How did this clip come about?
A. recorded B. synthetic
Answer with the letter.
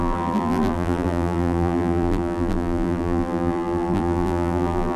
B